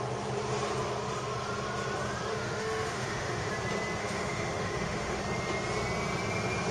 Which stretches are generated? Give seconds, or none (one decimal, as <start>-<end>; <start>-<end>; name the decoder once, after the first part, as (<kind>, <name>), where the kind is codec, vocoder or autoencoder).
2.3-3.5 (autoencoder, DAC-VAE); 4.0-5.2